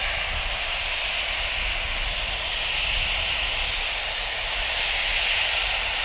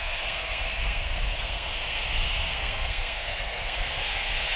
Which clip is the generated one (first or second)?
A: second